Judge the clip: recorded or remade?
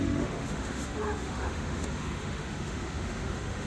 remade